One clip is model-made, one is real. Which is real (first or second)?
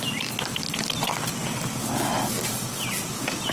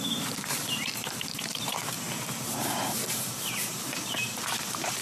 first